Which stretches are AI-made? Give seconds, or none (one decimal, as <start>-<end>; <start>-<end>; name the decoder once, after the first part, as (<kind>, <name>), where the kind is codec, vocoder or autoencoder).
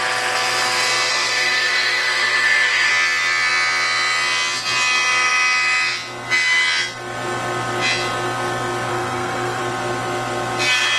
1.1-2.9 (codec, SNAC); 8.9-9.6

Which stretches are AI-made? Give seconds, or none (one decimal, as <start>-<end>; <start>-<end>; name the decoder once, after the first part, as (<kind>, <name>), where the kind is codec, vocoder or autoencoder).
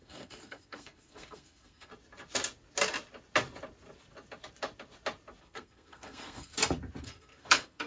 0.0-1.9 (codec, SNAC); 5.4-6.5; 7.0-7.9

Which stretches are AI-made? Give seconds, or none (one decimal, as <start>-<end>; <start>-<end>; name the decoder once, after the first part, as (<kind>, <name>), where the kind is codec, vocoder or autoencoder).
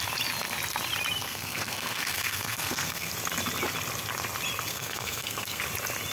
1.2-3.1 (codec, SNAC); 4.7-5.6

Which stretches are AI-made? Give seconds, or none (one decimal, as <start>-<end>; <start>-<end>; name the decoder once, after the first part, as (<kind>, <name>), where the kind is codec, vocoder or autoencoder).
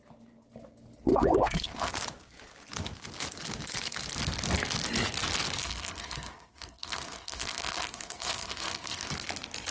1.1-1.9 (codec, SNAC); 5.6-9.1